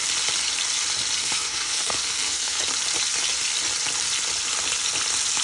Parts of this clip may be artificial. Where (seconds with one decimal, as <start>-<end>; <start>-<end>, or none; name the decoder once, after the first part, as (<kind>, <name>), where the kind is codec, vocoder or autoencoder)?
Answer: 1.2-2.6 (codec, SNAC)